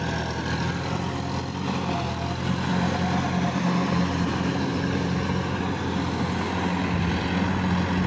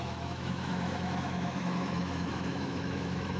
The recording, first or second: first